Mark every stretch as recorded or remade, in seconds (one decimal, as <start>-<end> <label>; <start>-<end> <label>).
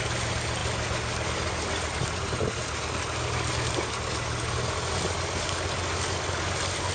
0.0-6.9 recorded